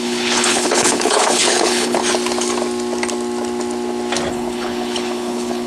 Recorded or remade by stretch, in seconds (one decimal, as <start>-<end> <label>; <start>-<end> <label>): 0.0-2.0 remade; 2.0-4.3 recorded; 4.3-5.7 remade